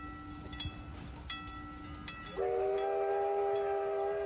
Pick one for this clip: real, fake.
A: real